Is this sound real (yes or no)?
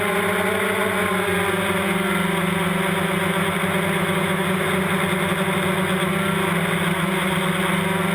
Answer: yes